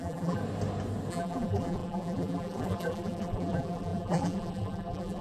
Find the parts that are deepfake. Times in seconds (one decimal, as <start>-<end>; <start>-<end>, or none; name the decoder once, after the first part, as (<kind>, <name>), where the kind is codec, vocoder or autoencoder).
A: 0.0-0.4 (vocoder, BigVGAN v2); 1.1-5.2